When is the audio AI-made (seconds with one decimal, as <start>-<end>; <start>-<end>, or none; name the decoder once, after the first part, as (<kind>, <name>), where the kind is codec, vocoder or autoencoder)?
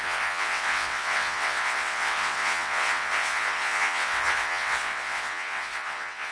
0.0-6.3 (vocoder, WaveNeXt)